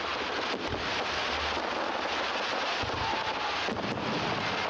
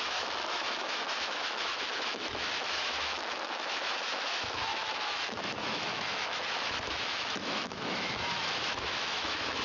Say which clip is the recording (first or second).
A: first